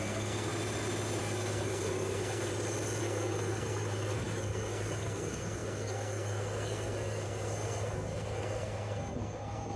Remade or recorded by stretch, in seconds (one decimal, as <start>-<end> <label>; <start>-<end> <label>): 0.0-0.5 remade; 0.5-1.2 recorded; 1.2-2.5 remade; 2.5-3.0 recorded; 3.0-9.8 remade